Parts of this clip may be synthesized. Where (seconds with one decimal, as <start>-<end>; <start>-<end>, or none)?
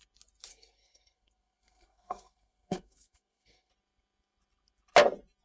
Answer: 0.5-3.7